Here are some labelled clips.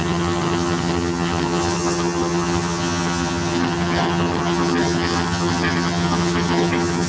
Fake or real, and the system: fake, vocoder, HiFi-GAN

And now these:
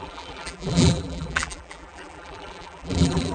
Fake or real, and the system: fake, vocoder, BigVGAN v2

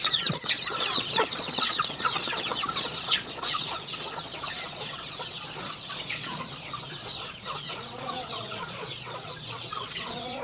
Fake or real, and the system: fake, vocoder, Vocos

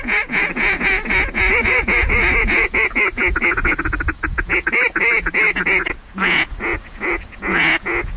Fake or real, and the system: fake, vocoder, Vocos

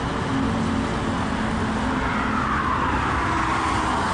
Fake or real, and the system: real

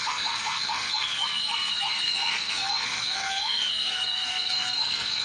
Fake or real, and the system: fake, codec, SNAC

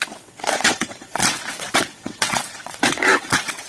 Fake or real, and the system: fake, vocoder, WaveNeXt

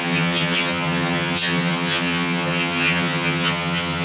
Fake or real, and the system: fake, vocoder, HiFi-GAN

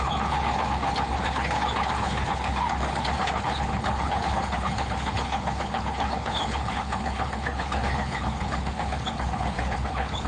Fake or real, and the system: fake, codec, HILCodec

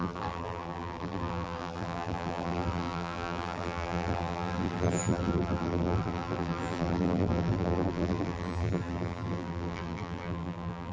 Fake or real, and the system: fake, vocoder, BigVGAN v2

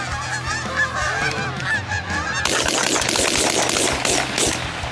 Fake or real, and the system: real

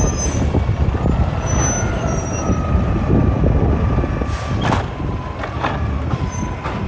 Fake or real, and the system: real